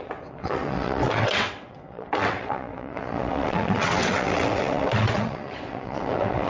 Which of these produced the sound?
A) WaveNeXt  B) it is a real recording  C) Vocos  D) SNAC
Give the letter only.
A